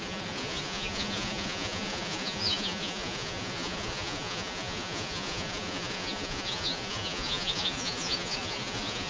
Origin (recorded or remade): remade